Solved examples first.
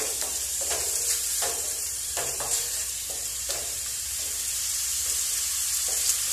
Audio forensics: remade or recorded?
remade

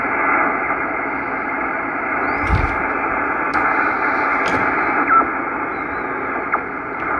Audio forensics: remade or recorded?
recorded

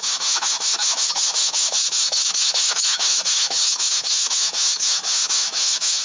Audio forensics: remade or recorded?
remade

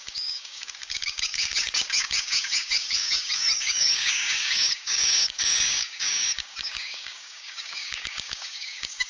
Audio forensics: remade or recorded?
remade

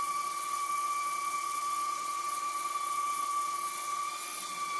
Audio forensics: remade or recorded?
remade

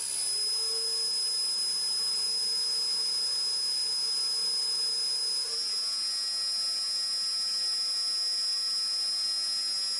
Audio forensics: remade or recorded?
recorded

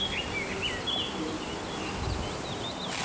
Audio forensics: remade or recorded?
recorded